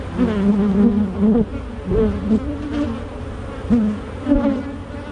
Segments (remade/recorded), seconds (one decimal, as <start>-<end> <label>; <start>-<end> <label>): 0.0-5.1 recorded